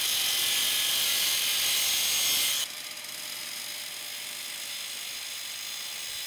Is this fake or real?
real